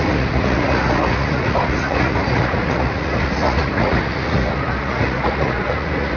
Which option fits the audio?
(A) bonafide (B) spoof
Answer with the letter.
B